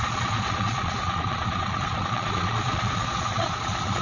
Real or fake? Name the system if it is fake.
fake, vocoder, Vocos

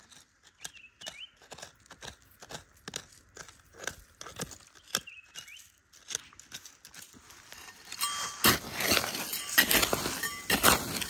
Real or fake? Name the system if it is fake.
real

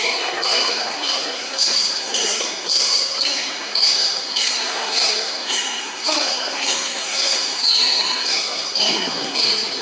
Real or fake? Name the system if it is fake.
fake, codec, SNAC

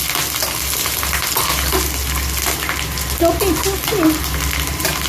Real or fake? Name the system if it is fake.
real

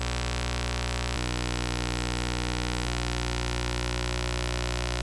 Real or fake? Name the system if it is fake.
real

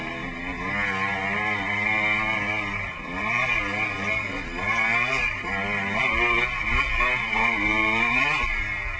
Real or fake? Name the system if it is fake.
real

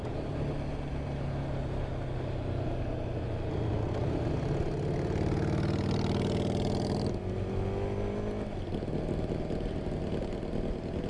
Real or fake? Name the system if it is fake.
real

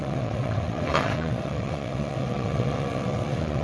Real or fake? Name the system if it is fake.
fake, vocoder, WaveNeXt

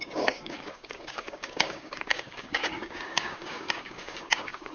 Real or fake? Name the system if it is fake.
fake, codec, DAC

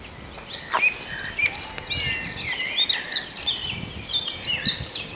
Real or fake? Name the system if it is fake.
real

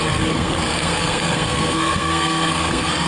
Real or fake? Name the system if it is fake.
fake, codec, SNAC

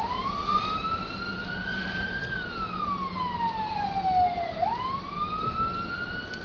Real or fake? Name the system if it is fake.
real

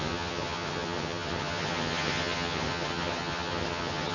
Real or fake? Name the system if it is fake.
fake, vocoder, HiFi-GAN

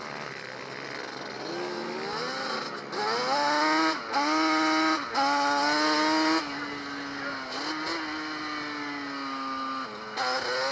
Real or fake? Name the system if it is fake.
real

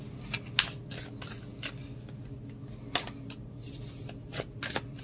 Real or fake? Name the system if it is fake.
real